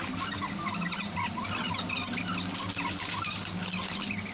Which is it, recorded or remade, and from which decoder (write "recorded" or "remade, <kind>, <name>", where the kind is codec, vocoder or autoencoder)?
recorded